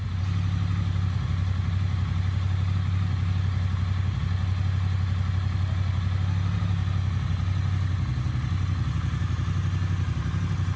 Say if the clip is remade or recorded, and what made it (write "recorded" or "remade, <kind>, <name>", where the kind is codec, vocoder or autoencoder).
recorded